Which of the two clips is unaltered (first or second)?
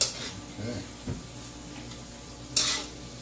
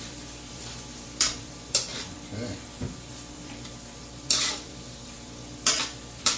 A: first